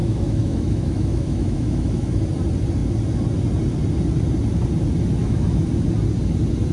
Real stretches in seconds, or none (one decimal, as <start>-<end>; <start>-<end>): 2.2-5.2; 5.7-6.7

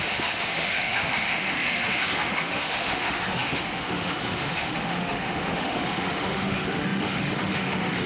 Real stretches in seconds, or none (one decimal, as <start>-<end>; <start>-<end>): none